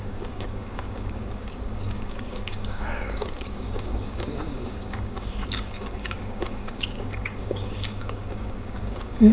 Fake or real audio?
fake